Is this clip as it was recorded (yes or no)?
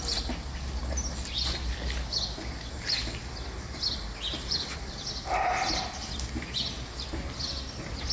yes